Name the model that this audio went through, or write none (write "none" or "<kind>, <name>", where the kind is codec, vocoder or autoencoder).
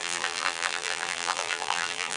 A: vocoder, BigVGAN v2